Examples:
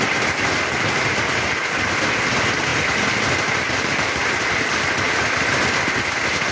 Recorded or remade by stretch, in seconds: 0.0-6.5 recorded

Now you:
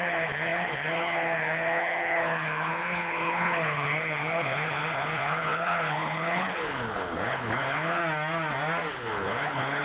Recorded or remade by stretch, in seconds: 0.0-8.0 remade; 8.0-8.9 recorded; 8.9-9.8 remade

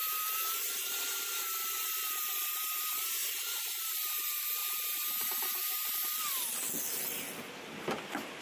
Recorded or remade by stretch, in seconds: 0.0-1.2 remade; 1.2-3.2 recorded; 3.2-3.8 remade; 3.8-4.6 recorded; 4.6-5.9 remade; 5.9-8.4 recorded

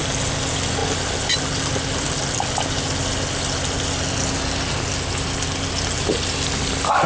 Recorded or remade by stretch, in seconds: 0.0-7.1 recorded